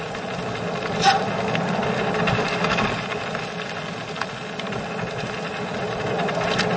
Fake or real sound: real